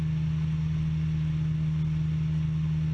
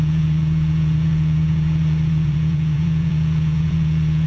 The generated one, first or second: second